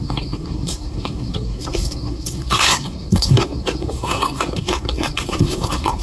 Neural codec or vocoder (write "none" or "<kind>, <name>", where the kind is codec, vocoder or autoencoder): codec, SNAC